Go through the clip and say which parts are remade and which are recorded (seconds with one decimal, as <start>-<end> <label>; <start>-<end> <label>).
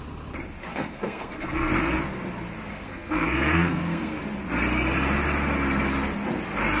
0.0-0.7 recorded; 0.7-1.7 remade; 1.7-2.7 recorded; 2.7-4.2 remade; 4.2-6.8 recorded